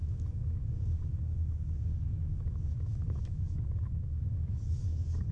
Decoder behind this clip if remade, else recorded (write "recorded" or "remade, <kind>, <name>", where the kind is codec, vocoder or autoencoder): remade, codec, DAC